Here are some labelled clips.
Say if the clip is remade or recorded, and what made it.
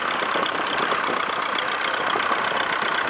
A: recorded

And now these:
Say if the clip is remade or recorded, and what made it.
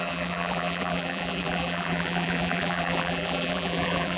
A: remade, vocoder, BigVGAN v2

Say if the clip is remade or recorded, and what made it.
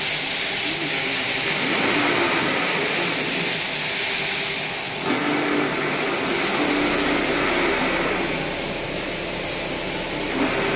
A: recorded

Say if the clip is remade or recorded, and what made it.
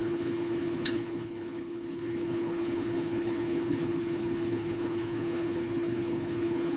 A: remade, codec, HILCodec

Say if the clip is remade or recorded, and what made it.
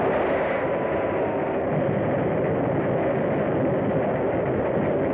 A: recorded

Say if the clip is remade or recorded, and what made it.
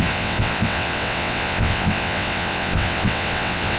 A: remade, vocoder, WaveNeXt